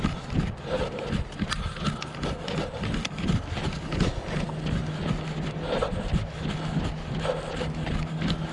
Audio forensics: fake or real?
real